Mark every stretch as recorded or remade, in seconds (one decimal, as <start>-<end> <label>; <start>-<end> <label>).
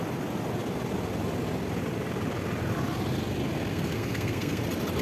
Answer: 0.0-3.7 recorded; 3.7-4.6 remade; 4.6-5.0 recorded